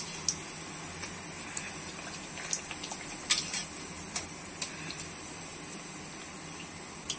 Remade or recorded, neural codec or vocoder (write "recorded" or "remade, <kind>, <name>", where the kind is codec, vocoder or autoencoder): recorded